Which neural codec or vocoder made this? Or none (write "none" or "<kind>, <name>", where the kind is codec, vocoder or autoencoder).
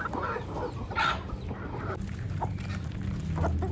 none